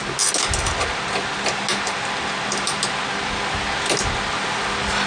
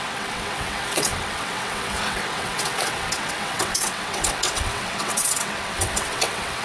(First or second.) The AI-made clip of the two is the second